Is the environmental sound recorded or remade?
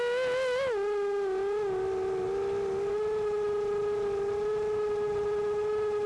recorded